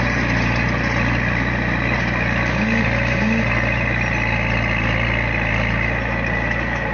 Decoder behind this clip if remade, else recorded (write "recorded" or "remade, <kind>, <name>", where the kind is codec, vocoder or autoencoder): recorded